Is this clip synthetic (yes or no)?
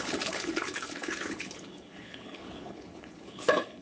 yes